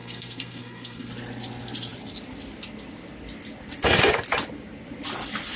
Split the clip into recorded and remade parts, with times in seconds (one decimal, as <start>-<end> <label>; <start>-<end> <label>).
0.0-1.1 remade; 1.1-5.6 recorded